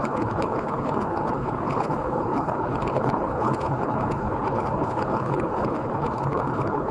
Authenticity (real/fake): fake